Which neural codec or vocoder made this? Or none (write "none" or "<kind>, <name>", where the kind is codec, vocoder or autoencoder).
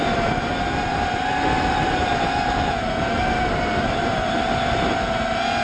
none